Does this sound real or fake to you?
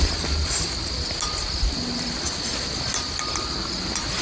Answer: real